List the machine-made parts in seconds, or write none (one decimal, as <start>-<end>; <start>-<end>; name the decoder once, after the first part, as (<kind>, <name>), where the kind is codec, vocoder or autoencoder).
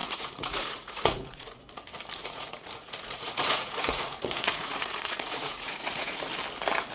0.0-1.6 (vocoder, Vocos); 2.2-6.3